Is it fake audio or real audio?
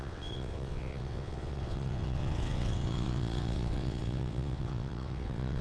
fake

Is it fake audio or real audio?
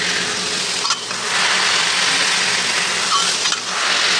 real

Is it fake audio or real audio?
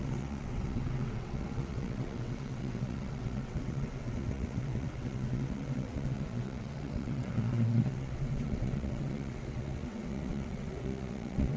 fake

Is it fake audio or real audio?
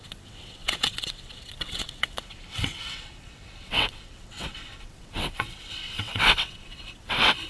fake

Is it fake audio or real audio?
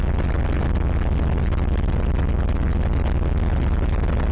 real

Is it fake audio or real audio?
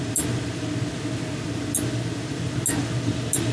real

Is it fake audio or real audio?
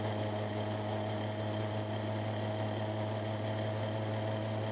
real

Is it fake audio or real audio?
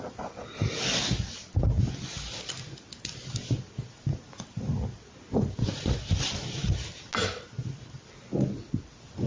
real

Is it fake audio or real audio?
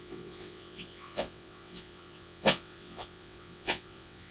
fake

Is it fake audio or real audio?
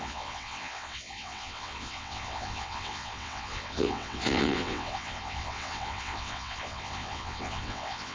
fake